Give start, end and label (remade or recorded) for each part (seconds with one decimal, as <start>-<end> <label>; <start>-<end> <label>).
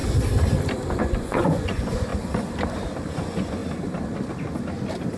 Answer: 0.0-1.0 recorded; 1.0-2.1 remade; 2.1-3.2 recorded; 3.2-3.6 remade; 3.6-5.2 recorded